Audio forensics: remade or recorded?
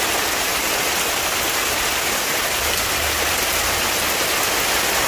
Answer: recorded